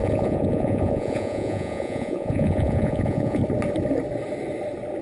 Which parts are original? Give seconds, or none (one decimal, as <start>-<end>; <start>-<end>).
3.4-5.0